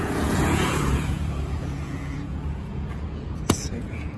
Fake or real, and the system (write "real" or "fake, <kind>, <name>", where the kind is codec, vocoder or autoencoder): fake, vocoder, Vocos